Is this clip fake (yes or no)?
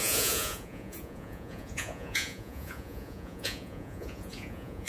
yes